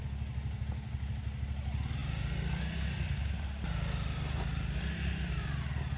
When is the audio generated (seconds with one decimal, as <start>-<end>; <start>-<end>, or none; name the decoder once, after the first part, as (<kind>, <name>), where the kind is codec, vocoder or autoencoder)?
none